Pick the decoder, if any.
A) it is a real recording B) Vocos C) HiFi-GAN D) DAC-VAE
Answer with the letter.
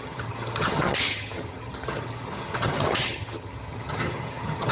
C